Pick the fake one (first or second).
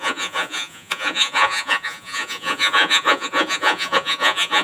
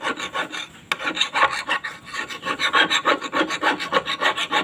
first